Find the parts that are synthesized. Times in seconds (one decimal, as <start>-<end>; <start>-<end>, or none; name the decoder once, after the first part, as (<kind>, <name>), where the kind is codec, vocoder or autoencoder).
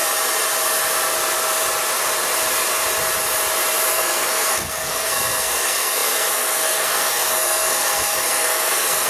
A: 3.9-9.1 (codec, SNAC)